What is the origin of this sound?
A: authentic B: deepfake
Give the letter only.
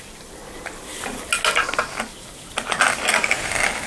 A